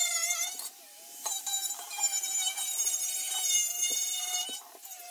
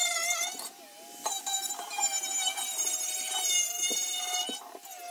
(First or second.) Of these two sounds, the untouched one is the second